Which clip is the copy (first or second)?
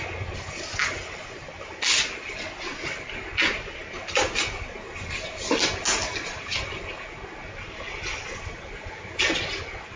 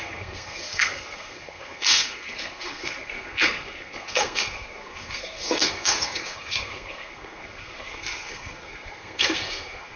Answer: second